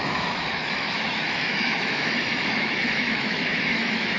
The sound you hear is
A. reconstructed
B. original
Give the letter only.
A